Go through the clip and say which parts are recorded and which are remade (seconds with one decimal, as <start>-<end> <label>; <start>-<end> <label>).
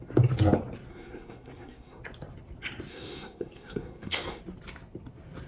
0.0-0.9 recorded; 0.9-2.0 remade; 2.0-2.9 recorded; 2.9-4.4 remade; 4.4-5.5 recorded